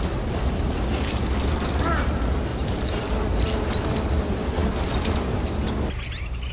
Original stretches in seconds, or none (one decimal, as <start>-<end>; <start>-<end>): 0.0-2.5; 3.1-6.5